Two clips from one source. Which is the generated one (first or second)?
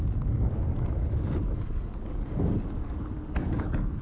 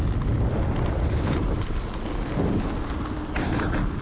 first